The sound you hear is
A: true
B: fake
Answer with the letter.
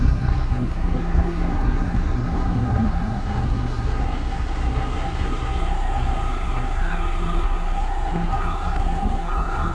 B